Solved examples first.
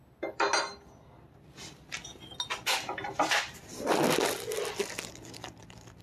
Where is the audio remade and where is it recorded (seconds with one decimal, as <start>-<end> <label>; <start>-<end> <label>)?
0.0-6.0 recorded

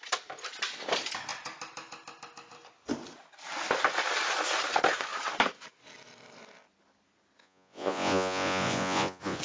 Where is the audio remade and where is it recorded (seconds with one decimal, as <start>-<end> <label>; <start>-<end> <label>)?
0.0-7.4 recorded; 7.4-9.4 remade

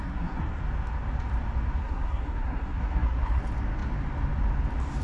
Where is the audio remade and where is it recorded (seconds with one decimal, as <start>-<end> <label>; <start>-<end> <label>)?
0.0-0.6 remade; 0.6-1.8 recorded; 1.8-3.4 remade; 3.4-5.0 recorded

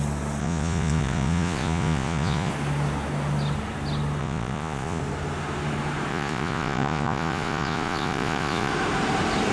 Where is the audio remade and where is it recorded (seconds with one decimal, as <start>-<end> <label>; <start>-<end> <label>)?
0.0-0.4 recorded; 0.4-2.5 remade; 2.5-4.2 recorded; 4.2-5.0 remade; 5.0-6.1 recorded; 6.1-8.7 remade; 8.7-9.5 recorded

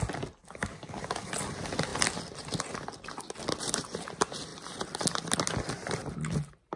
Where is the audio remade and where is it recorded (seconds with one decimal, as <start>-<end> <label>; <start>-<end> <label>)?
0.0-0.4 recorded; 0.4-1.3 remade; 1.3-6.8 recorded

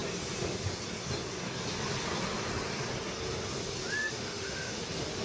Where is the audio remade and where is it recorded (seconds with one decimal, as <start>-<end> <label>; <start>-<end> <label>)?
0.0-4.0 recorded; 4.0-4.8 remade; 4.8-5.2 recorded

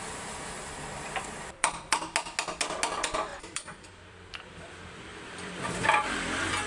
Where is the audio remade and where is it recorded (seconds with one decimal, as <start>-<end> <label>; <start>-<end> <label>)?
0.0-2.0 remade; 2.0-3.3 recorded; 3.3-4.6 remade; 4.6-5.1 recorded; 5.1-6.2 remade; 6.2-6.7 recorded